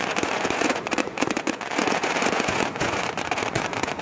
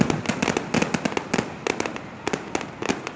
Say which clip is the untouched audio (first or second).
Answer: second